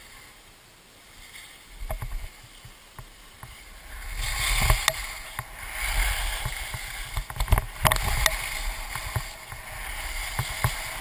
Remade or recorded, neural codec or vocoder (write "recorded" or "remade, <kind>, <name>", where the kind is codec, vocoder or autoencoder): recorded